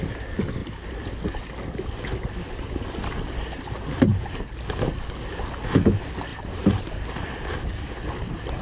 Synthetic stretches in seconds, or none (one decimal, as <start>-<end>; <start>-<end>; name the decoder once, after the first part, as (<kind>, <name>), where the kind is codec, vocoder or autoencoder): 6.3-7.1 (vocoder, BigVGAN v2)